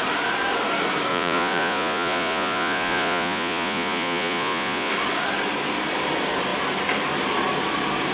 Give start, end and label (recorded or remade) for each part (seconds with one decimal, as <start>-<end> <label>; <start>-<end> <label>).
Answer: 0.0-1.1 recorded; 1.1-4.9 remade; 4.9-8.1 recorded